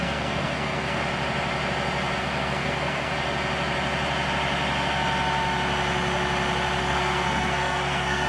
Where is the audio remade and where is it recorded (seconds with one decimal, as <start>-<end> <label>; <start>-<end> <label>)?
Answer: 0.0-1.0 remade; 1.0-2.2 recorded; 2.2-3.1 remade; 3.1-6.8 recorded; 6.8-8.3 remade